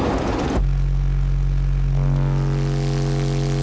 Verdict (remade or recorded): recorded